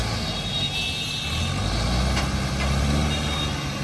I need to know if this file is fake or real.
real